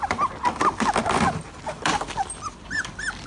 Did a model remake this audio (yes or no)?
no